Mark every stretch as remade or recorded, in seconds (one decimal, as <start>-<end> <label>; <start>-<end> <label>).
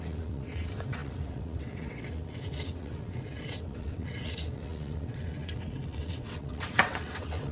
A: 0.0-7.5 remade